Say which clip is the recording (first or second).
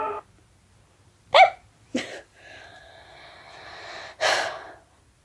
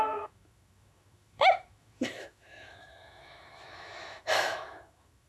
first